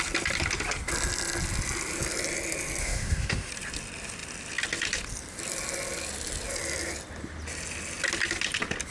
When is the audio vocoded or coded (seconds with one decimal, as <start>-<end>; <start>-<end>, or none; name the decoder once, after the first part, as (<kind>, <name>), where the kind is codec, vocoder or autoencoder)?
2.8-3.5 (autoencoder, DAC-VAE)